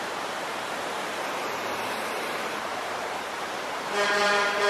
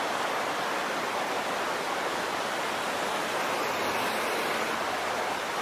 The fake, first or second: first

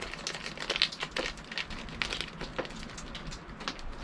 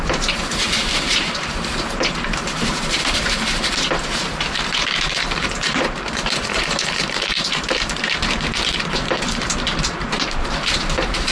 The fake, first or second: second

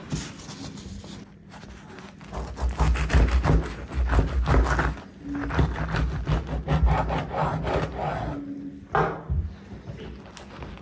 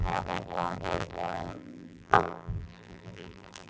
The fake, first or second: second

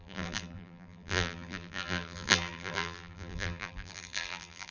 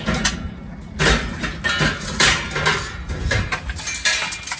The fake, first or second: first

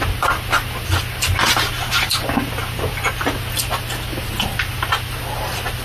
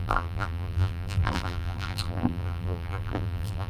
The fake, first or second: second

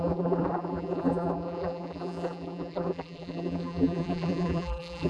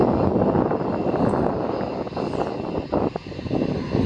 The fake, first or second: first